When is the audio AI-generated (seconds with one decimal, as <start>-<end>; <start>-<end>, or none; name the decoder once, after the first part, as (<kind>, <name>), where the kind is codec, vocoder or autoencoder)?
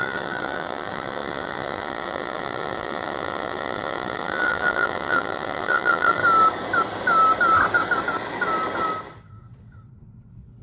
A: 0.0-6.2 (vocoder, WaveNeXt); 9.3-10.6